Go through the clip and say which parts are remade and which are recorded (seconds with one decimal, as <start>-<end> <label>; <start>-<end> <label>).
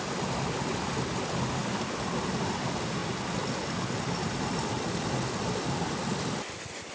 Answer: 0.0-6.9 recorded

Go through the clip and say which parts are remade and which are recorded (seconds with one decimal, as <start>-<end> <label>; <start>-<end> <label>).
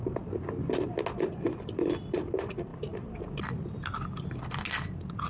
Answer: 0.0-5.3 recorded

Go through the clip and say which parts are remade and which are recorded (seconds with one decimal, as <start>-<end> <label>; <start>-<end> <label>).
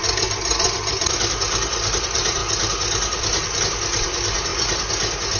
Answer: 0.0-5.4 recorded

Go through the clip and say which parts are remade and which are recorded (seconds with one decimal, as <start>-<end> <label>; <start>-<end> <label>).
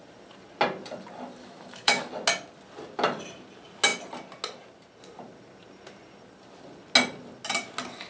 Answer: 0.0-1.4 recorded; 1.4-2.1 remade; 2.1-8.1 recorded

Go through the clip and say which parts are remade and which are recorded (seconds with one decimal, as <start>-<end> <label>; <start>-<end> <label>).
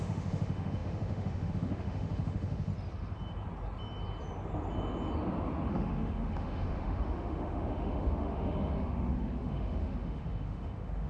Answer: 0.0-2.7 remade; 2.7-5.7 recorded; 5.7-11.1 remade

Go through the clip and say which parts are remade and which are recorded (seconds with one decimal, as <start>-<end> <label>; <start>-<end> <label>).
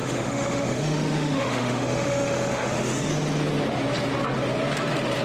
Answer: 0.0-3.1 remade; 3.1-5.2 recorded